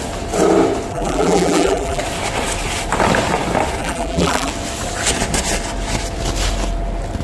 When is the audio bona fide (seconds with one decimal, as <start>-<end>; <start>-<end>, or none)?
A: 0.0-0.9; 2.0-3.8; 4.5-7.2